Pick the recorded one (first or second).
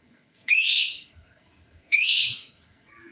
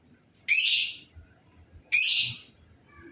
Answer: second